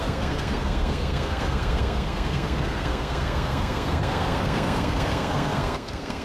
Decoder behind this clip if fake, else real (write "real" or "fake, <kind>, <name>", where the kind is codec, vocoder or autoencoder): fake, codec, SNAC